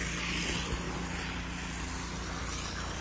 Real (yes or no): yes